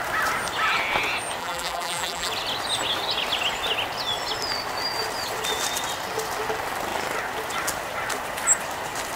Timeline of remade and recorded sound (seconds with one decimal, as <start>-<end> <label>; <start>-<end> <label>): 0.0-1.4 recorded; 1.4-2.3 remade; 2.3-9.2 recorded